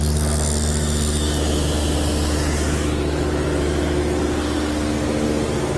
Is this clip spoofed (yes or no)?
no